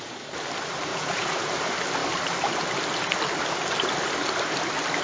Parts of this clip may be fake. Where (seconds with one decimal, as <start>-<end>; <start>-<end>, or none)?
0.9-1.5